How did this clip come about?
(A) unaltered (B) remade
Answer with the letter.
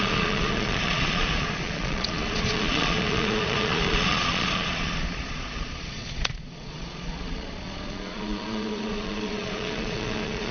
B